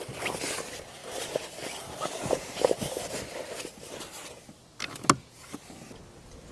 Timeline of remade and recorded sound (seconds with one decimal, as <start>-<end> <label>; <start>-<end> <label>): 0.0-6.5 recorded